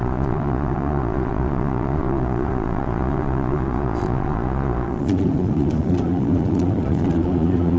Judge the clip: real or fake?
fake